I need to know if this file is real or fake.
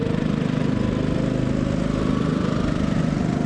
real